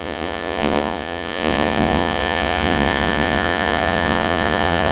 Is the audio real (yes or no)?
no